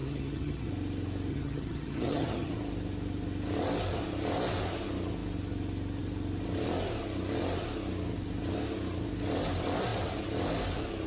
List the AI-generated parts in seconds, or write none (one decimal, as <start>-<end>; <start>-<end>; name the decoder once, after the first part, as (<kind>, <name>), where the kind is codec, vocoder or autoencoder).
0.0-0.7 (vocoder, HiFi-GAN); 1.3-2.5